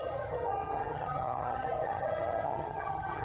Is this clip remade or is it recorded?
remade